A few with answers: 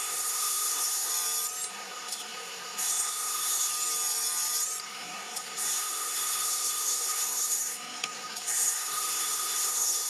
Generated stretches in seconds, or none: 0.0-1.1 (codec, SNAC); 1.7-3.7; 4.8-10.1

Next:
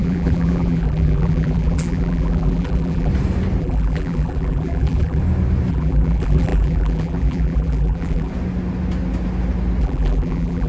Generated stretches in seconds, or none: 0.0-3.1 (vocoder, BigVGAN v2); 3.6-5.2; 5.7-8.3; 9.8-10.7

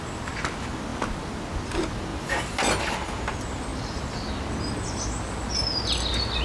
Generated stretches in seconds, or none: none

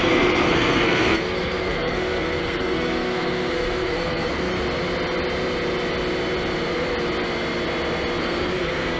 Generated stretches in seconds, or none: 0.0-4.5 (codec, SNAC); 8.2-9.0

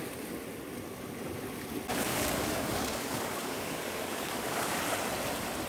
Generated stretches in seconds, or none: 1.9-4.8 (codec, DAC)

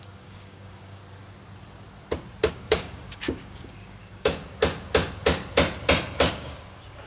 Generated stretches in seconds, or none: 0.0-1.0 (codec, DAC); 2.5-4.4; 6.3-7.1